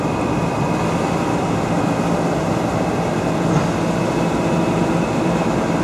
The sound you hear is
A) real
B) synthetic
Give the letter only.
A